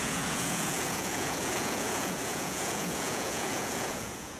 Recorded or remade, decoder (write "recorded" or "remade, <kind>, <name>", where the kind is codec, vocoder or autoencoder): remade, vocoder, Vocos